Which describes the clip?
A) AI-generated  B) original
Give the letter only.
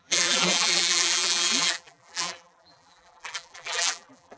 A